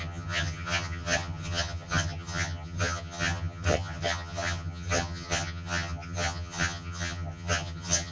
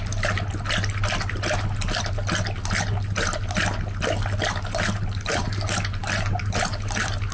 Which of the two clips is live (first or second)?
second